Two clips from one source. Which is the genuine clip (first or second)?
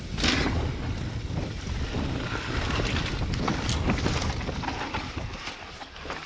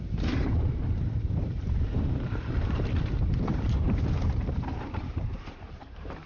first